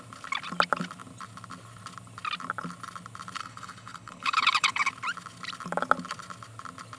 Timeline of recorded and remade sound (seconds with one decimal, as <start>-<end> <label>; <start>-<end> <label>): 0.0-3.4 recorded; 3.4-4.9 remade; 4.9-7.0 recorded